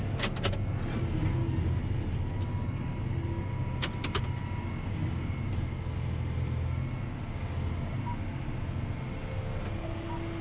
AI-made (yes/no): no